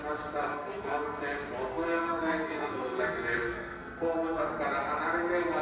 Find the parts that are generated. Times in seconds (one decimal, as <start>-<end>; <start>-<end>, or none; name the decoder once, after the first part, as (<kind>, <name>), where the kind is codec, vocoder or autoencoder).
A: 0.5-1.2 (codec, SNAC); 1.7-4.5